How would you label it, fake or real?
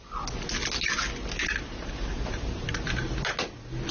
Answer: real